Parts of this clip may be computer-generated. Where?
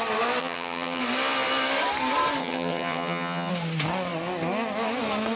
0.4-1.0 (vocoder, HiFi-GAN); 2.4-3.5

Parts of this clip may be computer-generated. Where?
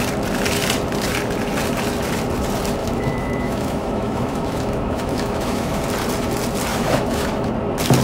2.8-5.8 (autoencoder, DAC-VAE); 6.7-7.5